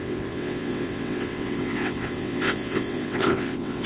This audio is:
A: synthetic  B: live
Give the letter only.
A